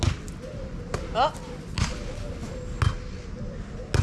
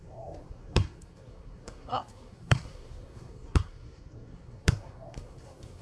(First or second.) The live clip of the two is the first